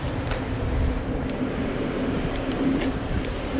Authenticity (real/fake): fake